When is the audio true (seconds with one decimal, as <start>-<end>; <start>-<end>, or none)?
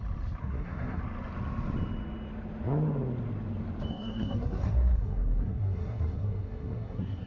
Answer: 0.0-0.4; 1.0-3.9